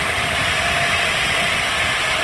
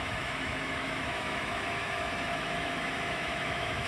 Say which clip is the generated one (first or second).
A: second